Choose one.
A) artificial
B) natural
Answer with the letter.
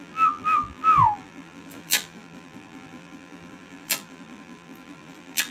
A